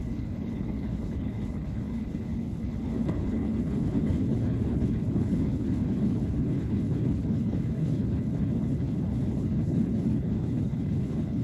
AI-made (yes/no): yes